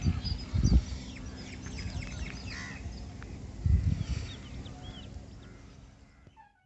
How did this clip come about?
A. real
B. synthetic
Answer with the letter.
A